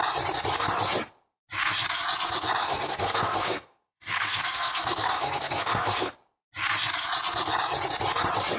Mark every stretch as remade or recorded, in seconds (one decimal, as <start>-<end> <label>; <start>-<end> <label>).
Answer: 0.0-2.6 recorded; 2.6-6.1 remade; 6.1-8.6 recorded